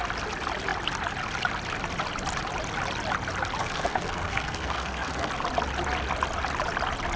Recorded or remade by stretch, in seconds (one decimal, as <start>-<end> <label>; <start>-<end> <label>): 0.0-3.6 recorded; 3.6-5.3 remade; 5.3-7.2 recorded